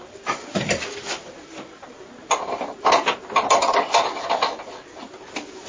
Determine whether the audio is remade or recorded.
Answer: recorded